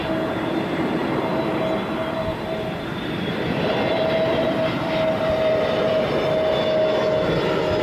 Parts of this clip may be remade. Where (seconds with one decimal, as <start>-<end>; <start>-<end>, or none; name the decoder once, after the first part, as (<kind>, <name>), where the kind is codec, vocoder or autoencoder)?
1.0-1.6 (vocoder, BigVGAN v2); 2.3-6.1